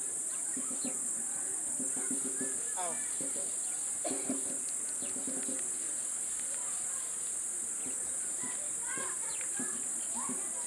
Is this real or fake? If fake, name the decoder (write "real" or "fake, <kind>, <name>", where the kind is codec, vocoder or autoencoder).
real